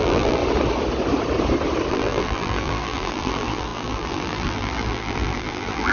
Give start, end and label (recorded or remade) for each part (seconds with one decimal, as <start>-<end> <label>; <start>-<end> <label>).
0.0-0.4 remade; 0.4-1.9 recorded; 1.9-5.9 remade